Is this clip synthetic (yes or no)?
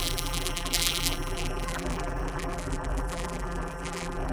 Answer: yes